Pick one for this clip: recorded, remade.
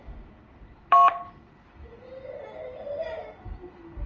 recorded